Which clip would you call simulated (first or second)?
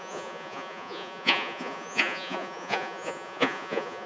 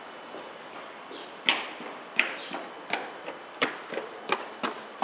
first